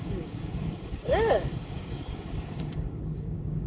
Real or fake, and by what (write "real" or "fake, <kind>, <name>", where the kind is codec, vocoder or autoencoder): fake, codec, DAC